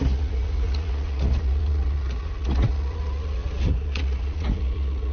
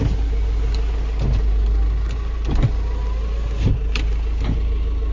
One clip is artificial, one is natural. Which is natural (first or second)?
second